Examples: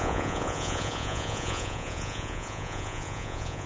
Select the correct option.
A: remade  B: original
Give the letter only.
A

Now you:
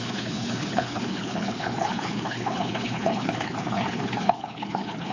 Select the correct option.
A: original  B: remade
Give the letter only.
B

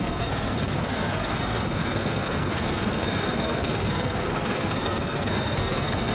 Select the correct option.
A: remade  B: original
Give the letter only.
A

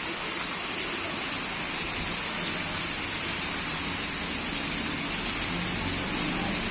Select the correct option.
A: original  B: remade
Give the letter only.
A